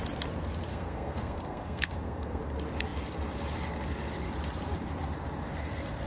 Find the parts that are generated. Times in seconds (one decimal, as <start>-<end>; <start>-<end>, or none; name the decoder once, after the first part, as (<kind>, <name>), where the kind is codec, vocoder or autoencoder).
0.7-2.4 (codec, SNAC)